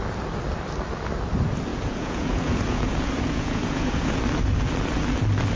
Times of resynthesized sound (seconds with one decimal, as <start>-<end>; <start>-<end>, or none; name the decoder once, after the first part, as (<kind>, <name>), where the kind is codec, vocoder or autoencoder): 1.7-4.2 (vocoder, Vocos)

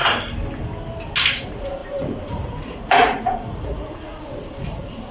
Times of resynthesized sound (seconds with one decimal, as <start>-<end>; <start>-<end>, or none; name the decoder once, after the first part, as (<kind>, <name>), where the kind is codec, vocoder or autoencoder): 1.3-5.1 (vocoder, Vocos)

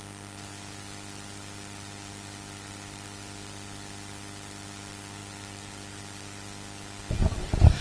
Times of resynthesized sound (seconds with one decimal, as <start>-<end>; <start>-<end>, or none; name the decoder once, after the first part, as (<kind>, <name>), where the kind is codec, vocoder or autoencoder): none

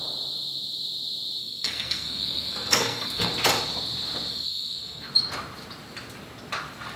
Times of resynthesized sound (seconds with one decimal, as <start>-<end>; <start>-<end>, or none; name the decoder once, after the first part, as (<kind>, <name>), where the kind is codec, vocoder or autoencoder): 1.4-3.3 (codec, SNAC); 4.3-5.1

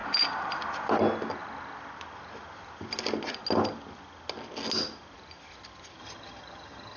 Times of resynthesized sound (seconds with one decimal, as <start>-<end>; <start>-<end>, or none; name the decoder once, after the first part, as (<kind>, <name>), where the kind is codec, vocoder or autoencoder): 6.0-7.0 (vocoder, HiFi-GAN)